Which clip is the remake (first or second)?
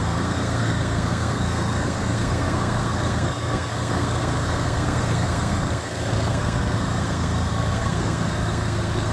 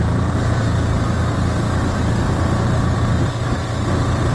first